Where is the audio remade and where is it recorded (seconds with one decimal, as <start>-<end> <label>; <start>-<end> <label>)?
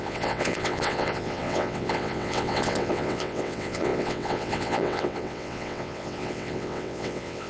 0.0-7.5 remade